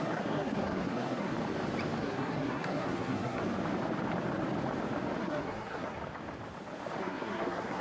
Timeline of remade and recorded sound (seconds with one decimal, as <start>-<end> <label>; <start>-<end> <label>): 0.0-1.3 remade; 1.3-2.0 recorded; 2.0-3.4 remade; 3.4-5.2 recorded; 5.2-6.0 remade; 6.0-7.0 recorded; 7.0-7.8 remade